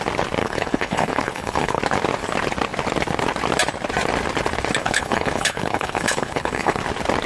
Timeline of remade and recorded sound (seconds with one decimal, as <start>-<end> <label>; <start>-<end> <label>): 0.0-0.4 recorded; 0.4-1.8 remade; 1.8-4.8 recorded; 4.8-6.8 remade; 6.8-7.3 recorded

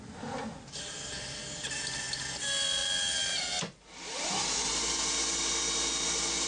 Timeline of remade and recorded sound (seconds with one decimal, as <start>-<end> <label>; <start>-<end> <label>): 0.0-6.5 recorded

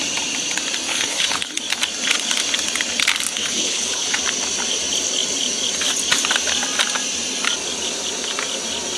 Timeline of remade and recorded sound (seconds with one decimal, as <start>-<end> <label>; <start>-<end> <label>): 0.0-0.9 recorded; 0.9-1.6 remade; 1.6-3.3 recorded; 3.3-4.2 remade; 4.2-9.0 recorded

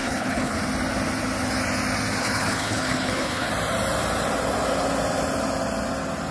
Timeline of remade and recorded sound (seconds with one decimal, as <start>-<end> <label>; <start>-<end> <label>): 0.0-0.6 remade; 0.6-2.2 recorded; 2.2-3.5 remade; 3.5-6.3 recorded

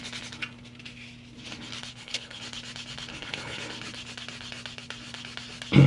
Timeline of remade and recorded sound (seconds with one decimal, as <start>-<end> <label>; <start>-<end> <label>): 0.0-1.9 recorded; 1.9-2.4 remade; 2.4-3.1 recorded; 3.1-3.6 remade; 3.6-5.9 recorded

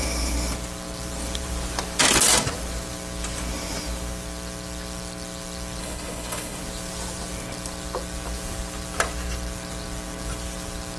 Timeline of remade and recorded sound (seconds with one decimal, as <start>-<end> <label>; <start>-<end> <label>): 0.0-5.8 recorded; 5.8-6.6 remade; 6.6-11.0 recorded